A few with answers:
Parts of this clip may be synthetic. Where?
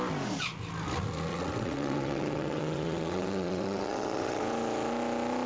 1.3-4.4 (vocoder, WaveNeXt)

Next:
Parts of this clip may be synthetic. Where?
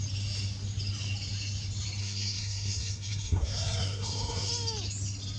2.0-4.5 (codec, SNAC)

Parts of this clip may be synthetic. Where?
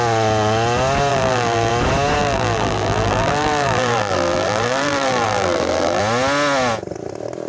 1.1-1.7 (vocoder, BigVGAN v2); 2.2-6.0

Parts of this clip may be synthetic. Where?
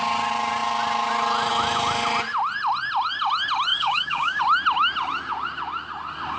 3.7-4.4 (codec, DAC)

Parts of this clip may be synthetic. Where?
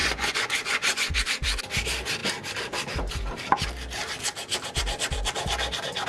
0.0-1.2 (vocoder, Vocos)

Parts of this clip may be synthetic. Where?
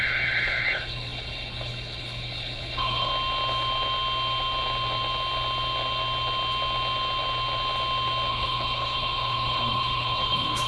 0.0-3.1 (codec, HILCodec); 8.3-10.7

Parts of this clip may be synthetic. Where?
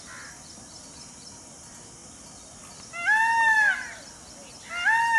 none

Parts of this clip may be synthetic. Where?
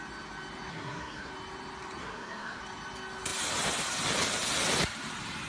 0.7-1.3 (codec, SNAC); 2.0-2.6